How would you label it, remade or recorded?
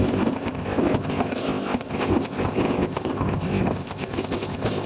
remade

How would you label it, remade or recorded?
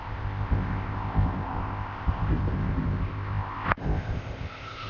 remade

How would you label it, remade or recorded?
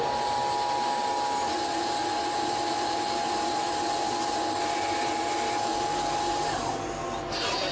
recorded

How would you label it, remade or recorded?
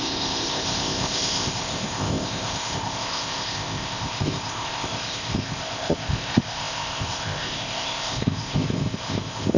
remade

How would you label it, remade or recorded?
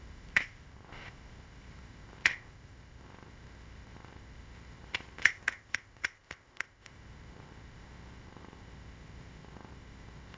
remade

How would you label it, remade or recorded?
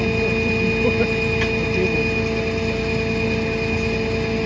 recorded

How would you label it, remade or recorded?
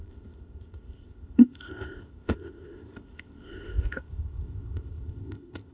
remade